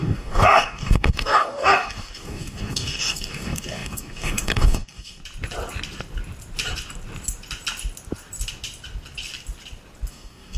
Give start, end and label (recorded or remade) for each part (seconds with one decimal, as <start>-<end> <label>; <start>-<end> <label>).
0.0-5.2 remade; 5.2-10.1 recorded; 10.1-10.6 remade